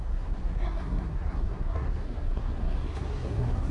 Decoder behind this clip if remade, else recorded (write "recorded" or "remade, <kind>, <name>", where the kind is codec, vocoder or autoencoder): remade, codec, SNAC